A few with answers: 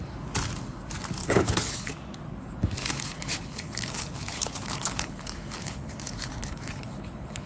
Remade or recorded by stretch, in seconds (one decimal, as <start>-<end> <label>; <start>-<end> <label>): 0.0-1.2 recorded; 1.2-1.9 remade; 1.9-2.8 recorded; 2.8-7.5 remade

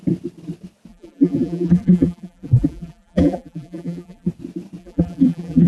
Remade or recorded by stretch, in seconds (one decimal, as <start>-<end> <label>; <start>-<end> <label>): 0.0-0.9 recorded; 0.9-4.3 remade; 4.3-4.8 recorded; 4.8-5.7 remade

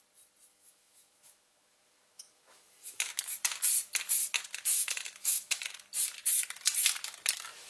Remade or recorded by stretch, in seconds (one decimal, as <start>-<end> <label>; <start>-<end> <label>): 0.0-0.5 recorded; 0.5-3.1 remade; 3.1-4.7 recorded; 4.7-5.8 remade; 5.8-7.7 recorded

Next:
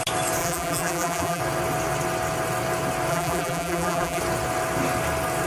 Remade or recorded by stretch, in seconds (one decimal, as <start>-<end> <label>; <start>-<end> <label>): 0.0-0.4 recorded; 0.4-1.4 remade; 1.4-3.1 recorded; 3.1-4.2 remade; 4.2-5.5 recorded

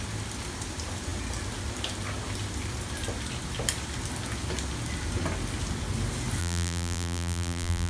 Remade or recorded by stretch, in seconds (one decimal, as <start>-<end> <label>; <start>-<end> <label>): 0.0-6.4 recorded; 6.4-7.9 remade

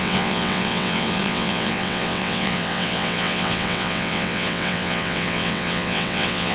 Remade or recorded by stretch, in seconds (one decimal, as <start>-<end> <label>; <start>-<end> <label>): 0.0-6.5 remade